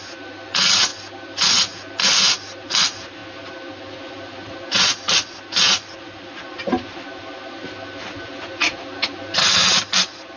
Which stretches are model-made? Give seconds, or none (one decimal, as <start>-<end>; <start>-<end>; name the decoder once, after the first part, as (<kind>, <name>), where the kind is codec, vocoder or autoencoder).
none